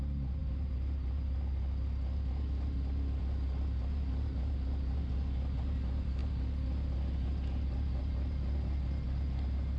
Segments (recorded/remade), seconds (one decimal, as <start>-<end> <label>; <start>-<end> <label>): 0.0-9.8 recorded